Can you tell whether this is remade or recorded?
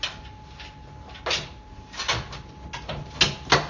recorded